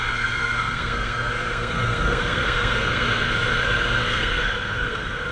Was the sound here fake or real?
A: fake